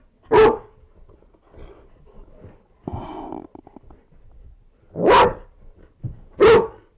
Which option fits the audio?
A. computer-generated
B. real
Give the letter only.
B